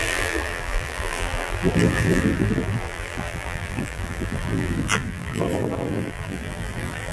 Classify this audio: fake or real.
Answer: fake